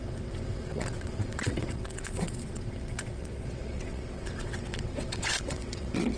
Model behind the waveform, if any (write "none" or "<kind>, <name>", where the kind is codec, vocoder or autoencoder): vocoder, WaveNeXt